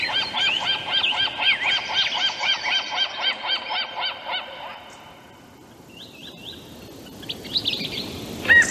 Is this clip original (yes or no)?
yes